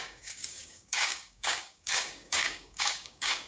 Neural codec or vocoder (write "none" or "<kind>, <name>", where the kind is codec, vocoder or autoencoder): codec, DAC